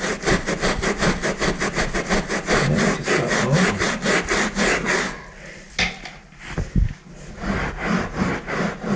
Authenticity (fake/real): real